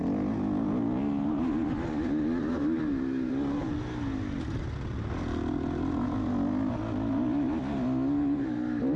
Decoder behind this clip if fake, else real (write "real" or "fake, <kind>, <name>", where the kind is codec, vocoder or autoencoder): real